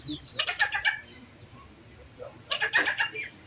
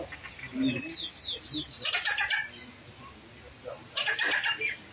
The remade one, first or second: first